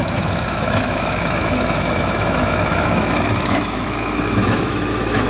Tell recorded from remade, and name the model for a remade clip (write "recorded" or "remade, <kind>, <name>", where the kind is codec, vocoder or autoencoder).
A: remade, autoencoder, DAC-VAE